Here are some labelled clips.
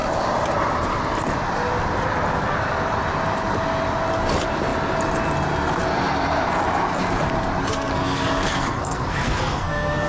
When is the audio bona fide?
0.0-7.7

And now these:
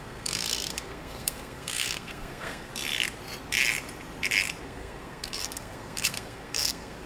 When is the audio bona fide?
2.7-4.6

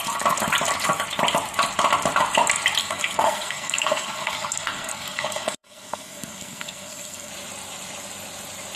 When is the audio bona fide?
0.0-2.8; 7.3-8.8

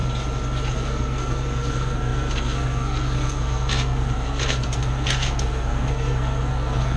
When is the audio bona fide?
0.0-0.7

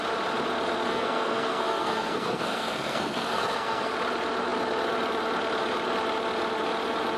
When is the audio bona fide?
0.0-0.9; 3.9-7.2

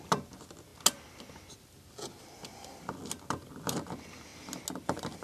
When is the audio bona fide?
0.0-5.2

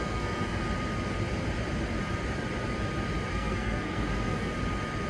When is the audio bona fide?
0.6-3.3; 4.5-5.1

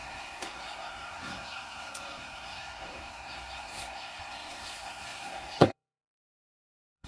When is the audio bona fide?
none